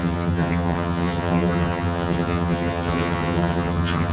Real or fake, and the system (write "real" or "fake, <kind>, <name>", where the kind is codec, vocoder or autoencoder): fake, vocoder, HiFi-GAN